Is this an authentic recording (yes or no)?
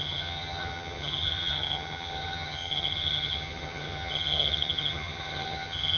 no